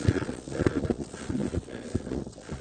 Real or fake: fake